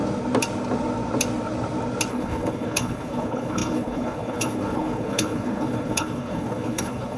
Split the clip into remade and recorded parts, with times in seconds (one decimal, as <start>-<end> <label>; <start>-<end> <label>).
0.0-2.1 recorded; 2.1-7.2 remade